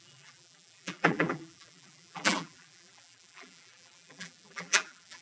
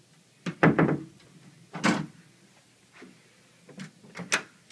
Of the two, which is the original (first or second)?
second